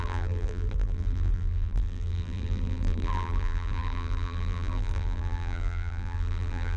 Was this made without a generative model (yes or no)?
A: no